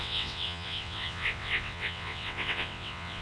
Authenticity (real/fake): fake